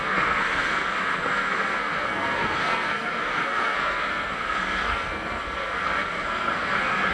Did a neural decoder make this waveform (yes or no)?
yes